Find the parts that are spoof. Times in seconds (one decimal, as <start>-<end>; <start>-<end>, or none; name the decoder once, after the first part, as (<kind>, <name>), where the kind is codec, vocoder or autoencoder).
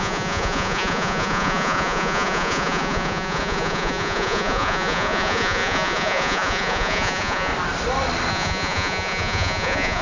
0.0-7.5 (vocoder, Vocos); 8.3-10.0